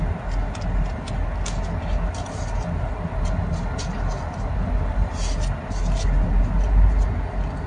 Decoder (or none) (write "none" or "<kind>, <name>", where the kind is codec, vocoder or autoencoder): none